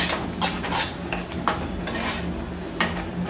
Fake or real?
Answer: real